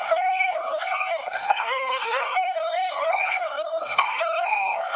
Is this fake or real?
fake